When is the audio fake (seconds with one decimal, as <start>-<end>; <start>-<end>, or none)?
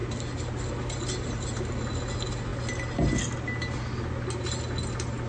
none